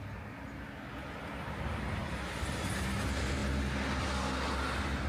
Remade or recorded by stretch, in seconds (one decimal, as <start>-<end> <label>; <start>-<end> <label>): 0.0-5.1 recorded